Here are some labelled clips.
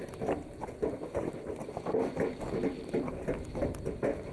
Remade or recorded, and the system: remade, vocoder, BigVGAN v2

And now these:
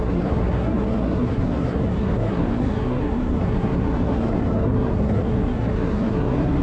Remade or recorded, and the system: remade, codec, SNAC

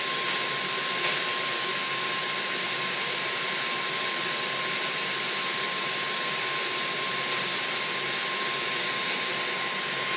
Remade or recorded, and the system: recorded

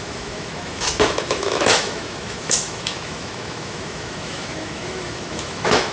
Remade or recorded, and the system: remade, autoencoder, DAC-VAE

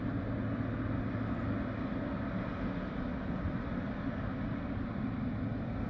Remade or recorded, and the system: recorded